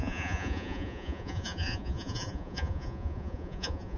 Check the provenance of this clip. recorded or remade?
remade